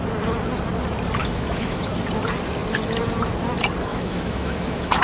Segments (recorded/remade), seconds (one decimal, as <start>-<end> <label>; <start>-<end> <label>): 0.0-1.2 recorded; 1.2-1.9 remade; 1.9-3.9 recorded; 3.9-5.0 remade